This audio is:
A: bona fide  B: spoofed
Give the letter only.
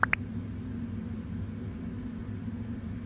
A